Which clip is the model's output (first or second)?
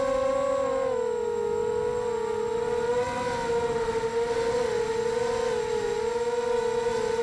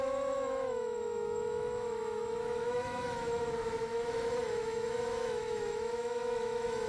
second